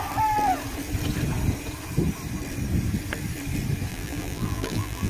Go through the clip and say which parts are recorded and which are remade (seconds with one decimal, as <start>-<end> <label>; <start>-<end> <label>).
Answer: 0.0-3.9 recorded; 3.9-5.1 remade